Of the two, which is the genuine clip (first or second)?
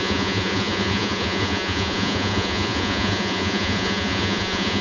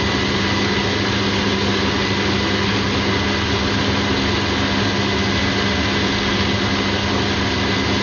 second